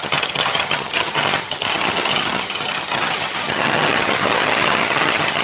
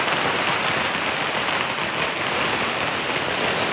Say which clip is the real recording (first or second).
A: second